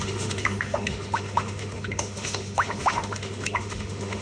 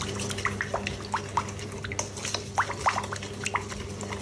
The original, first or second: second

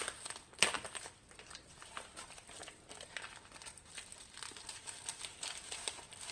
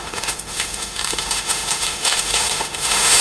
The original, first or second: first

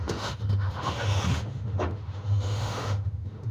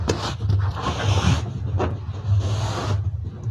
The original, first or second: second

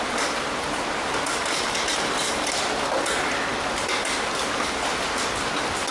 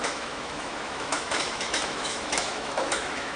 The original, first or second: first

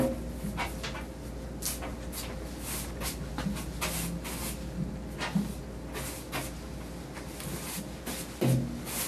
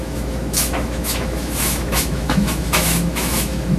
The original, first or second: first